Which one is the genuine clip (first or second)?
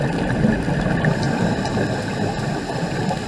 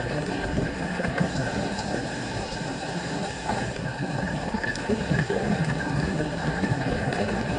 first